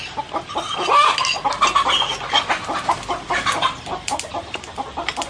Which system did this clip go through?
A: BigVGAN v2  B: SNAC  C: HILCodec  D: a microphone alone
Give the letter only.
D